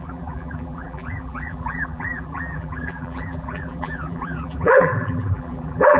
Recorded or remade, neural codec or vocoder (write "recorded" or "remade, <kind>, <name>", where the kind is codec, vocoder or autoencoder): remade, vocoder, BigVGAN v2